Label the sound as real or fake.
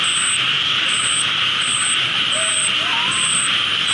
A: real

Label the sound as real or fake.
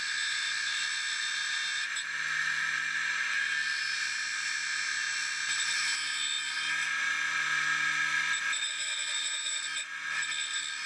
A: real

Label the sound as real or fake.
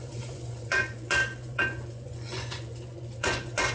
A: fake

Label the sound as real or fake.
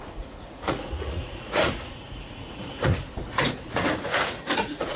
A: fake